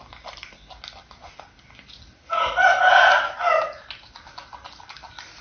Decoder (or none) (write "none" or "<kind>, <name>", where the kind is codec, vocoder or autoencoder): none